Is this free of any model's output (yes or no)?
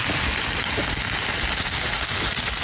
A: yes